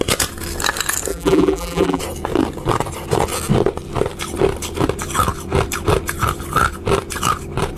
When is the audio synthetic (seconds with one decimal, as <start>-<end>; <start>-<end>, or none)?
1.1-2.0